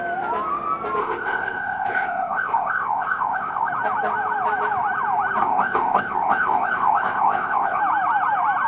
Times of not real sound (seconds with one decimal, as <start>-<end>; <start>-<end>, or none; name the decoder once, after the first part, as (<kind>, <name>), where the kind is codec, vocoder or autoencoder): 1.0-3.7 (codec, ZipCodec); 5.4-7.8